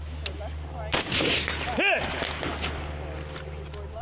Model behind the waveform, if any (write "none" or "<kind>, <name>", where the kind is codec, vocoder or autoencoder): none